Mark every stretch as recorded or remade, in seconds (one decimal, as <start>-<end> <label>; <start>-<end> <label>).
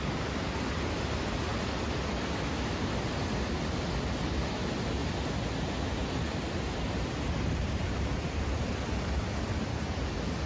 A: 0.0-10.5 recorded